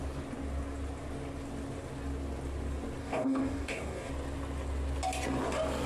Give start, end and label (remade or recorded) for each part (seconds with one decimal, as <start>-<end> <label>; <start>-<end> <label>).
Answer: 0.0-3.0 recorded; 3.0-4.1 remade; 4.1-5.9 recorded